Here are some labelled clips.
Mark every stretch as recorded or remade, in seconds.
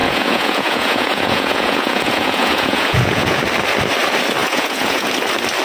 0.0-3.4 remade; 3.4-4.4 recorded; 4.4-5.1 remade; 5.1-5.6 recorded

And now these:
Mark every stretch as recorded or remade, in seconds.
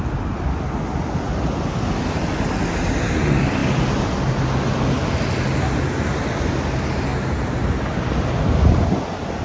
0.0-9.4 recorded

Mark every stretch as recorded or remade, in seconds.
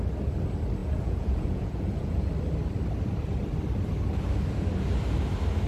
0.0-0.8 recorded; 0.8-2.3 remade; 2.3-5.7 recorded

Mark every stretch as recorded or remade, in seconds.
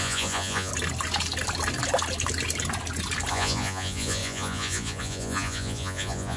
0.0-0.7 remade; 0.7-3.3 recorded; 3.3-6.4 remade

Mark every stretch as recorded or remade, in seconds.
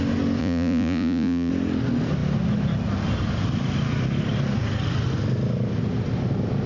0.0-0.4 recorded; 0.4-1.5 remade; 1.5-6.7 recorded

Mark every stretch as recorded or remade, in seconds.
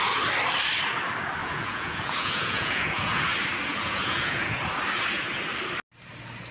0.0-1.4 recorded; 1.4-3.3 remade; 3.3-3.7 recorded; 3.7-4.6 remade; 4.6-6.5 recorded